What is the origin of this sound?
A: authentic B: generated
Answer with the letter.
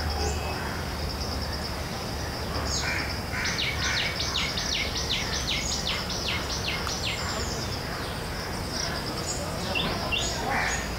A